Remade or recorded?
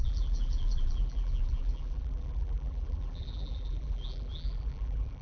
remade